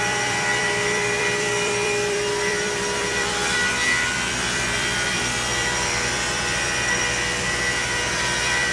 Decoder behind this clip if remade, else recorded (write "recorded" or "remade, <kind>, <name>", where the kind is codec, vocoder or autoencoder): remade, vocoder, BigVGAN v2